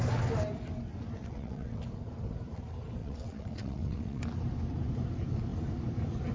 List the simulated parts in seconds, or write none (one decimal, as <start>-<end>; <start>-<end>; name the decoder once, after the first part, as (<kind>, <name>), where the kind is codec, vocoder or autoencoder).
1.2-1.8 (vocoder, WaveNeXt); 3.0-4.2